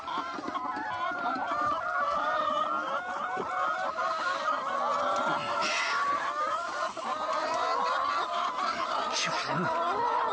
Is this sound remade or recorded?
recorded